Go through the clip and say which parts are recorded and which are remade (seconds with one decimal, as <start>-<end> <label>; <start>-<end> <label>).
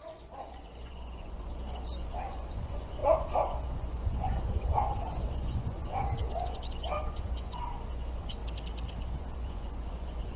0.0-8.4 remade; 8.4-9.0 recorded; 9.0-10.4 remade